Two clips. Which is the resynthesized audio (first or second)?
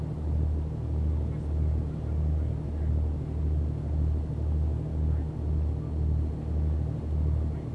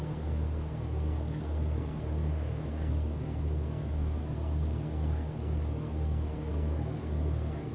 second